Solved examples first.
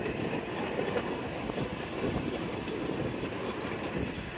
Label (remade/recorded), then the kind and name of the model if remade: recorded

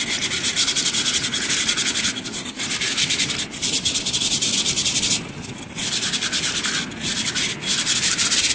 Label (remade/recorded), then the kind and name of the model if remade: recorded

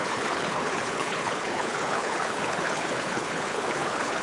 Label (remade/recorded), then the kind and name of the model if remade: remade, codec, HILCodec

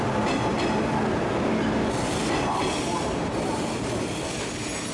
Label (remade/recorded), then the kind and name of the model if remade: recorded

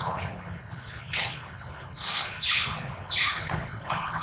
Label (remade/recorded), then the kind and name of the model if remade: remade, codec, HILCodec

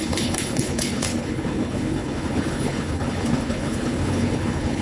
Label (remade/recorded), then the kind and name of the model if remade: remade, codec, HILCodec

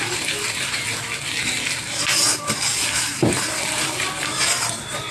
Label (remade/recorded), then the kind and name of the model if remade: recorded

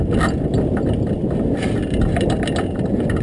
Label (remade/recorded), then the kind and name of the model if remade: recorded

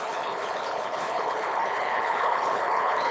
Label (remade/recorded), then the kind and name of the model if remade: remade, codec, HILCodec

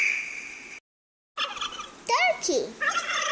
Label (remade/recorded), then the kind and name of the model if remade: recorded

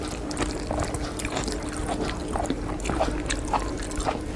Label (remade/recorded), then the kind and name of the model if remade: recorded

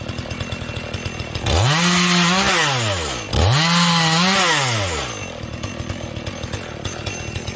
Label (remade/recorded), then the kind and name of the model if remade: recorded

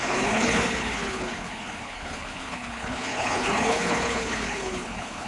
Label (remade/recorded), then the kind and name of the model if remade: remade, codec, HILCodec